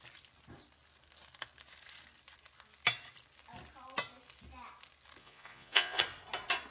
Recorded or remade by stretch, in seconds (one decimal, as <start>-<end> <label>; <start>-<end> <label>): 0.0-5.2 recorded; 5.2-6.0 remade; 6.0-6.7 recorded